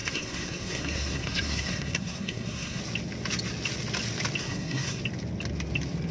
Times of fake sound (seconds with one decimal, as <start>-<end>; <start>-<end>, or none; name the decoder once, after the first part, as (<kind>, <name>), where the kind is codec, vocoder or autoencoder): 0.0-2.8 (codec, SNAC); 4.4-5.0